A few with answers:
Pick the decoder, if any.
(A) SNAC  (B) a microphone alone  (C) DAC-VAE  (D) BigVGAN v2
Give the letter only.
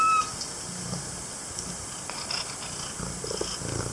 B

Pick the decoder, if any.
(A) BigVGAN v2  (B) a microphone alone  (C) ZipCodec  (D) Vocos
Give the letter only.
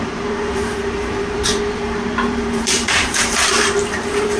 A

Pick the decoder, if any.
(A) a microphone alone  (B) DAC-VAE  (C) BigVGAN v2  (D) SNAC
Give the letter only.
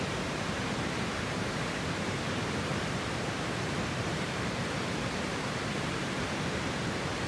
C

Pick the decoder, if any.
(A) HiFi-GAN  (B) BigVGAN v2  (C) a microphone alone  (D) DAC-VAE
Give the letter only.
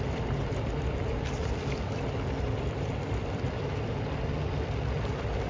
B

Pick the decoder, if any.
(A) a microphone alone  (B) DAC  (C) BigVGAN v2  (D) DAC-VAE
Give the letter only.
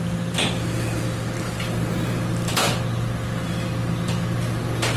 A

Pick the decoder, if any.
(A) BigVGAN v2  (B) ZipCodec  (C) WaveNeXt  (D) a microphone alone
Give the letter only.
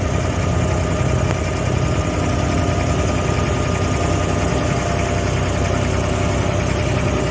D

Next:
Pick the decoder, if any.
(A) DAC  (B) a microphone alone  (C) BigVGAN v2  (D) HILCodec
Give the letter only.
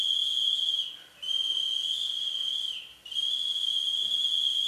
B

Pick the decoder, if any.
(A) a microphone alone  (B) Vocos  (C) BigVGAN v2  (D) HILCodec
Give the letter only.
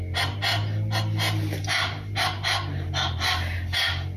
A